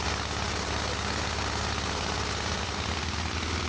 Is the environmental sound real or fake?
real